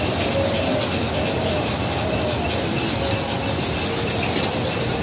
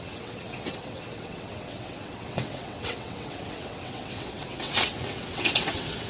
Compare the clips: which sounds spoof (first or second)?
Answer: second